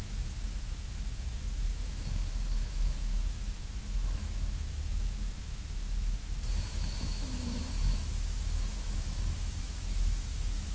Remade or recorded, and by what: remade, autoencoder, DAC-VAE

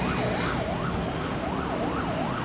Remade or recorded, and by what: recorded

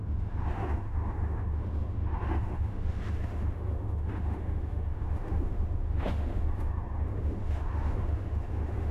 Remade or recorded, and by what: remade, autoencoder, DAC-VAE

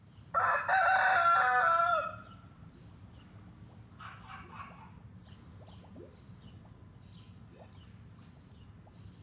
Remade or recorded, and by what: recorded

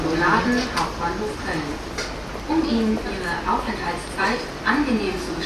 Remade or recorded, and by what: recorded